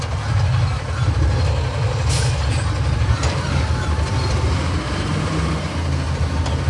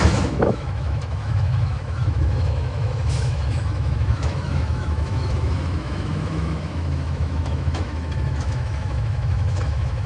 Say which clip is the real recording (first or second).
first